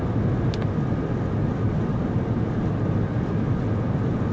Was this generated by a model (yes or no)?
no